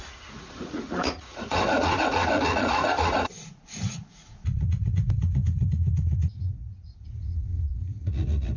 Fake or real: fake